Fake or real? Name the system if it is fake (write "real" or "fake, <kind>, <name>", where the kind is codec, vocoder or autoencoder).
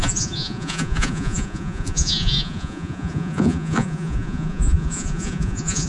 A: fake, vocoder, Vocos